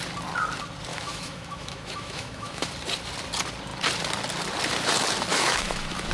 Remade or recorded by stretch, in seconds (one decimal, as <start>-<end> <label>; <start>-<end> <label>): 0.0-0.9 recorded; 0.9-2.7 remade; 2.7-5.3 recorded; 5.3-6.1 remade